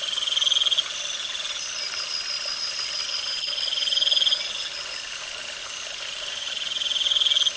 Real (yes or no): yes